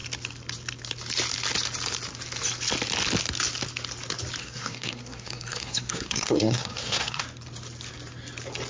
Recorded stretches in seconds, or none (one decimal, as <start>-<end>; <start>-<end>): 0.0-4.4; 7.2-8.7